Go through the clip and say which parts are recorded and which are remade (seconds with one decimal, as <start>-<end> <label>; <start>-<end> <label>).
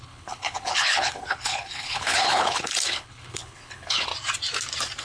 0.0-4.1 remade; 4.1-5.0 recorded